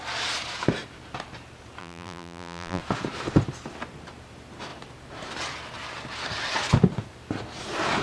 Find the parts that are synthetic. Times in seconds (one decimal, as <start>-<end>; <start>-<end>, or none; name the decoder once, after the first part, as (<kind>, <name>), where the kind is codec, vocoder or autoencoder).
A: 1.8-2.8 (vocoder, BigVGAN v2)